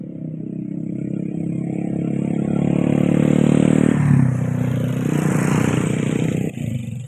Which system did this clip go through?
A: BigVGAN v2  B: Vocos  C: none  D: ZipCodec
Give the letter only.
C